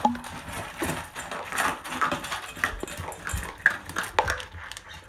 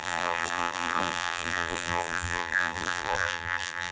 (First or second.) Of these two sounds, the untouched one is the first